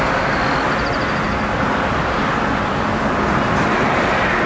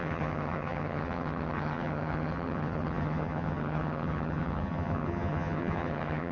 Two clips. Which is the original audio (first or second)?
first